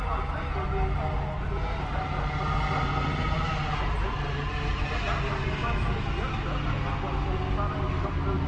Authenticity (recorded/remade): recorded